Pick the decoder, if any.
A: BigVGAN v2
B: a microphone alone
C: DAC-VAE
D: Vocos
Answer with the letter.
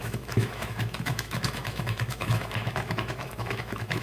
C